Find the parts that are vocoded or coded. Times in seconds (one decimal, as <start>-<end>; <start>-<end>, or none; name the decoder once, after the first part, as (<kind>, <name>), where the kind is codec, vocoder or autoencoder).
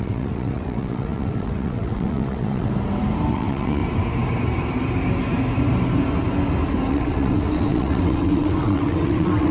0.0-2.7 (vocoder, WaveNeXt); 3.3-3.8; 6.9-9.5